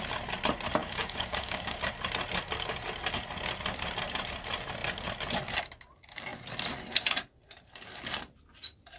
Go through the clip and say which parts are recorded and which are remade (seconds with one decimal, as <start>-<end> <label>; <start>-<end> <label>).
0.0-0.8 recorded; 0.8-1.8 remade; 1.8-9.0 recorded